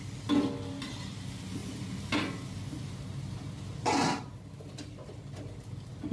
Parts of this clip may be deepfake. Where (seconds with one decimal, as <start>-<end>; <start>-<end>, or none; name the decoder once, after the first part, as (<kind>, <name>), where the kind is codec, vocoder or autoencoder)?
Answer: none